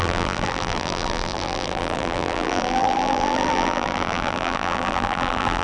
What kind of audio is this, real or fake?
fake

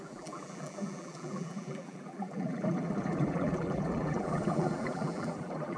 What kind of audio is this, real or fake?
fake